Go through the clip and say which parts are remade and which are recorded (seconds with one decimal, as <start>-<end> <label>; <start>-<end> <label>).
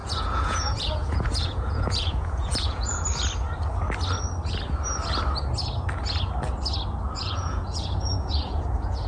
0.0-2.9 remade; 2.9-7.2 recorded; 7.2-9.1 remade